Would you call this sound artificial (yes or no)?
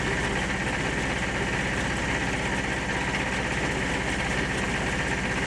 no